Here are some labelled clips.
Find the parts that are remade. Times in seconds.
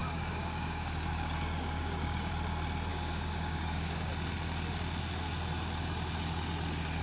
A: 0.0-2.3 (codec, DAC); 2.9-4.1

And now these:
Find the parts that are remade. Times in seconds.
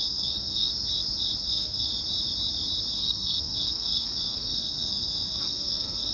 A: 0.0-0.7 (codec, SNAC); 1.4-1.9; 2.9-6.1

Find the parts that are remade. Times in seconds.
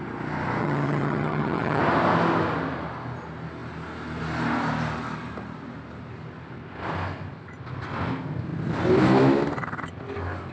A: 0.6-1.8 (vocoder, HiFi-GAN)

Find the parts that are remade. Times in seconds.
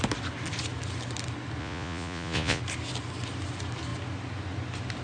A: 1.6-2.6 (vocoder, Vocos)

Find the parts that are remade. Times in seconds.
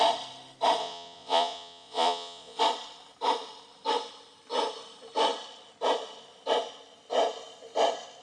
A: 0.8-2.6 (vocoder, Vocos)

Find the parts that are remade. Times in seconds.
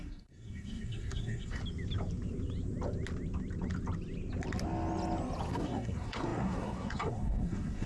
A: 0.0-1.6 (codec, SNAC); 5.5-7.9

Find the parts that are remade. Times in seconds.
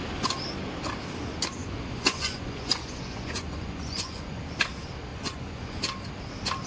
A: 1.6-4.4 (vocoder, Vocos); 5.1-5.8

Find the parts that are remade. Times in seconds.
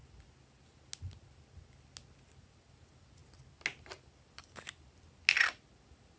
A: none